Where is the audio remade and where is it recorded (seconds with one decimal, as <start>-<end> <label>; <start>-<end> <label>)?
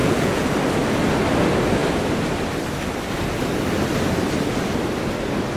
0.0-0.5 remade; 0.5-5.6 recorded